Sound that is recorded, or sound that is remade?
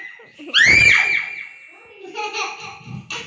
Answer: recorded